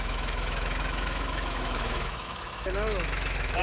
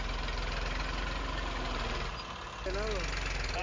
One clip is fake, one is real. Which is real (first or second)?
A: second